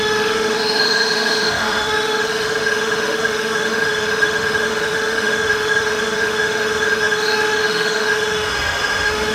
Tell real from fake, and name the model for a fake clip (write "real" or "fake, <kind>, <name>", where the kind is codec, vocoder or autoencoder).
fake, autoencoder, DAC-VAE